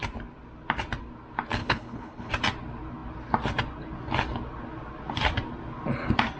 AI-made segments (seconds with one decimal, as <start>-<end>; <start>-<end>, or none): 1.6-2.3